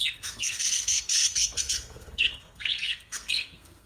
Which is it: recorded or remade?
remade